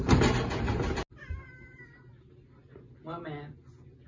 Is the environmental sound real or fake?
real